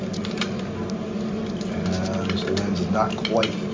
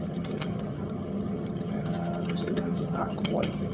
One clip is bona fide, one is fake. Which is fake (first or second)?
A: second